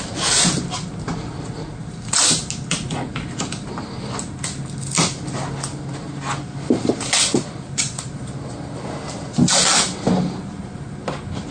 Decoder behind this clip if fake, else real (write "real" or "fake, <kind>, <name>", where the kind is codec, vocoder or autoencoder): real